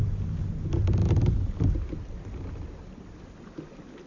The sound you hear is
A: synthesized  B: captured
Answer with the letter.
B